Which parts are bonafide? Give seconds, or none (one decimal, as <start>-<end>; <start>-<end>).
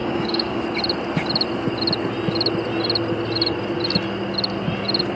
0.6-5.2